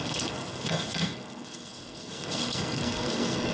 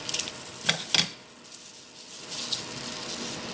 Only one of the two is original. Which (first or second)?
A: second